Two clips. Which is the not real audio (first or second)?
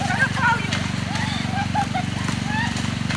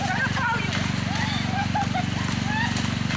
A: first